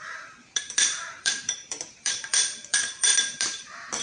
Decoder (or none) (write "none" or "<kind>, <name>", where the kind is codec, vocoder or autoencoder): vocoder, BigVGAN v2